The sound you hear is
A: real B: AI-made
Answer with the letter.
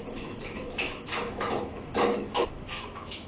B